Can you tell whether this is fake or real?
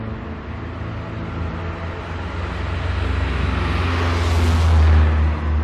real